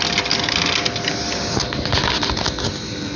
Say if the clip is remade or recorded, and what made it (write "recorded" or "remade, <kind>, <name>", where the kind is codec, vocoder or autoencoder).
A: recorded